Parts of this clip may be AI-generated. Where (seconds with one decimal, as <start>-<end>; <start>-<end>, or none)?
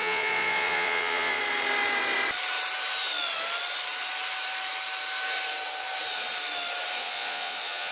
0.0-1.4; 7.0-7.9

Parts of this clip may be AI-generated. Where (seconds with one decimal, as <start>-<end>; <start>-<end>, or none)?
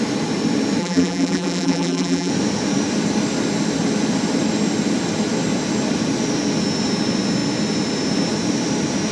0.8-2.3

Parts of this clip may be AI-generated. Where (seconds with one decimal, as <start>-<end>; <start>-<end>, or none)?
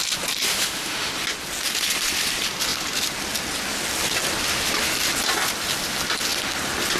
0.5-1.1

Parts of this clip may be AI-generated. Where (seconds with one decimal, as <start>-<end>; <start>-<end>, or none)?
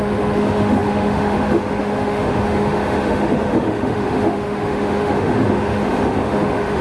0.0-6.8